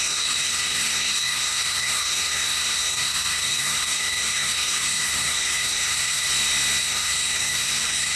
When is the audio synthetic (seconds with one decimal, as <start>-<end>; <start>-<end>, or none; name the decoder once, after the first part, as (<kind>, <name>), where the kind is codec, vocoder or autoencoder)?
0.0-6.3 (codec, SNAC); 6.8-8.2